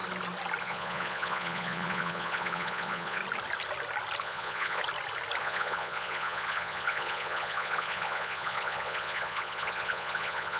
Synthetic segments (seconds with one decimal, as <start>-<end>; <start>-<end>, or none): 0.6-3.2; 4.2-4.8; 5.4-10.6